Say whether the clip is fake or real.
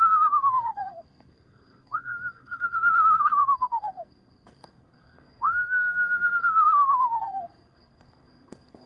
fake